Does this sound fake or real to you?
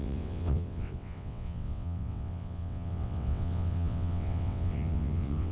fake